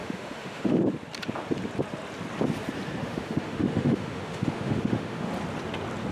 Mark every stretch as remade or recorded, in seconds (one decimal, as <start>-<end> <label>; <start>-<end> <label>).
0.0-0.8 remade; 0.8-3.0 recorded; 3.0-5.3 remade; 5.3-6.1 recorded